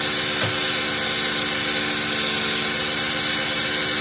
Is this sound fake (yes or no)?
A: no